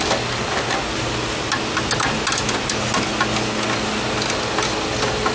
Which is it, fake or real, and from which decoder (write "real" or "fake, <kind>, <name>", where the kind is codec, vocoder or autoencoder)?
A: real